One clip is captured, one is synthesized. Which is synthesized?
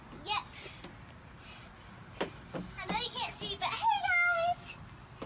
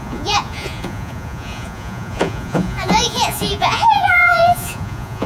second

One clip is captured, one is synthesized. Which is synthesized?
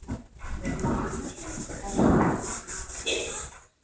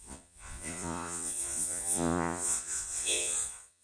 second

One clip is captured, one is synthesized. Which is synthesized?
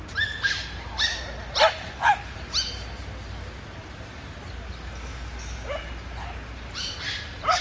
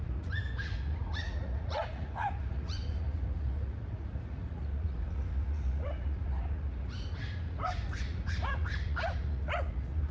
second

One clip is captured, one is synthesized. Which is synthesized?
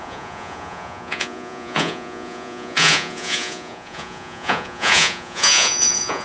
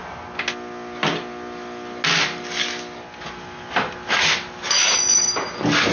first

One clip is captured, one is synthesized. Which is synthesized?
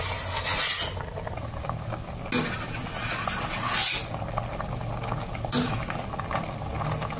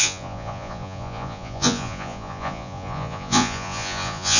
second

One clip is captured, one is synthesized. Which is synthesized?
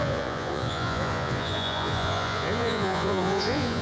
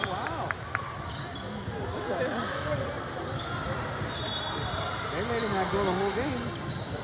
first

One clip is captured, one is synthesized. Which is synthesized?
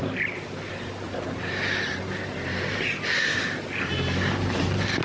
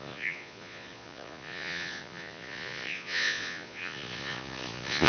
second